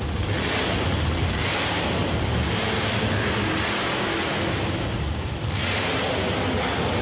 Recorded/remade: recorded